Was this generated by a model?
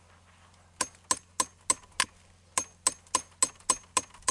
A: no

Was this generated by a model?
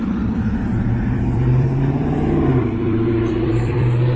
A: yes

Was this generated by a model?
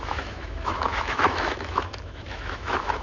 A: yes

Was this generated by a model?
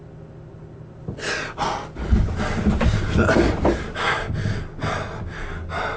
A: no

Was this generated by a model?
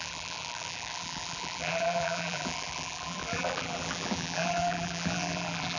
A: yes